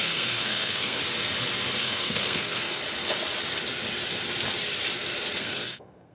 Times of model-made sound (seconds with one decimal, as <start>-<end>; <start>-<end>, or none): 0.0-1.0; 1.8-2.8; 5.4-6.1